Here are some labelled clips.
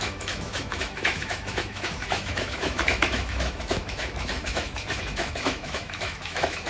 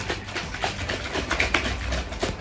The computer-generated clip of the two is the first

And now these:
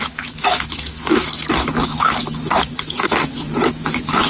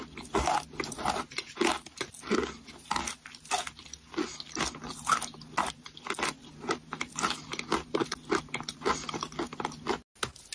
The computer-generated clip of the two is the first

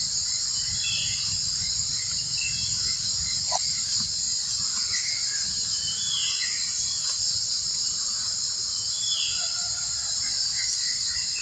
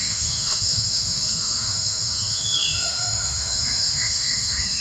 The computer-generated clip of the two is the second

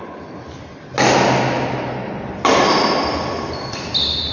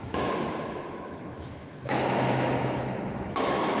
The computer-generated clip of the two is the second